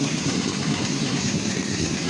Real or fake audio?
fake